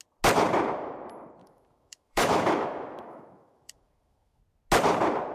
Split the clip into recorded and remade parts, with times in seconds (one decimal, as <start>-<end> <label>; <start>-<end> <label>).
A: 0.0-1.4 recorded; 1.4-4.4 remade; 4.4-5.3 recorded